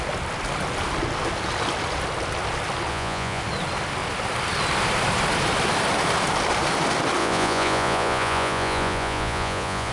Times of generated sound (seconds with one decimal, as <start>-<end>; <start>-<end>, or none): 2.9-3.4; 7.2-9.9